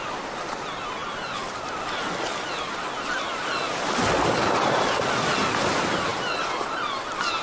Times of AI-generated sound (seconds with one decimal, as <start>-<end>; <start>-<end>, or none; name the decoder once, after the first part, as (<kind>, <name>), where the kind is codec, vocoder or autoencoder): none